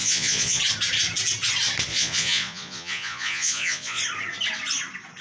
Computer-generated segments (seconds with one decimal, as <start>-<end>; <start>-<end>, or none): 0.0-0.6; 1.9-4.0